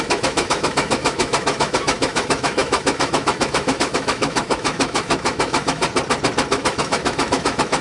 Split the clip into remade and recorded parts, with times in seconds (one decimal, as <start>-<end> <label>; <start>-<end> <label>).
0.0-5.8 remade; 5.8-6.5 recorded; 6.5-7.8 remade